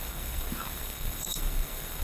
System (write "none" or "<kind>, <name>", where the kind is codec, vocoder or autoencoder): codec, SNAC